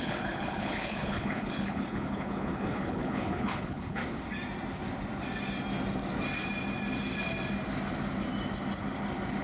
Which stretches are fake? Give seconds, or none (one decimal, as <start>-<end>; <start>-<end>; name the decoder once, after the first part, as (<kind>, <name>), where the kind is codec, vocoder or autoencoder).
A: 0.0-4.0 (codec, HILCodec)